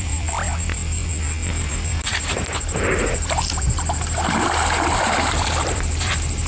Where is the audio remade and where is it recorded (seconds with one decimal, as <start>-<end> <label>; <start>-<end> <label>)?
0.0-1.0 remade; 1.0-1.7 recorded; 1.7-6.5 remade